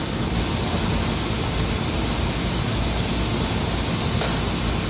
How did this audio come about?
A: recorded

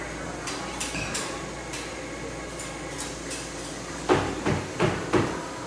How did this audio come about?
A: recorded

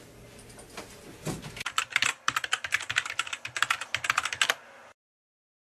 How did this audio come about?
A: recorded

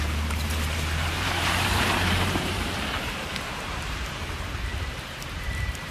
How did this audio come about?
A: remade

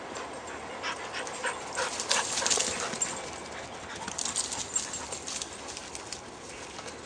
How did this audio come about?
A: recorded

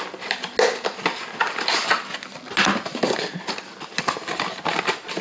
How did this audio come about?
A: recorded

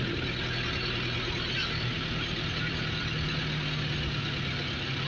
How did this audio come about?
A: recorded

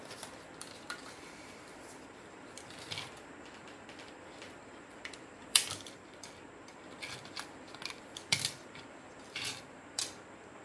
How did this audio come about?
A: remade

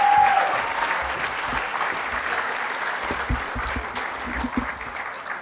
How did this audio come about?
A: recorded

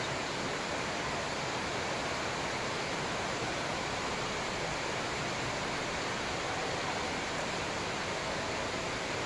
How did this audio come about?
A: remade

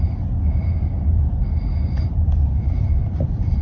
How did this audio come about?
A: recorded